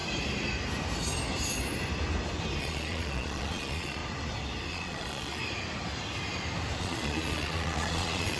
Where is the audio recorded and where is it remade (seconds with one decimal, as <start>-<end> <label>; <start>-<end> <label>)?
0.0-2.6 recorded; 2.6-4.0 remade; 4.0-4.7 recorded; 4.7-5.4 remade; 5.4-6.8 recorded; 6.8-8.4 remade